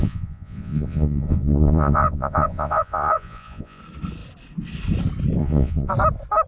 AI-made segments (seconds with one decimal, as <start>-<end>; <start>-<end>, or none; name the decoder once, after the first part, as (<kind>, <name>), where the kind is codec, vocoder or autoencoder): 0.0-3.8 (vocoder, Vocos); 5.4-5.9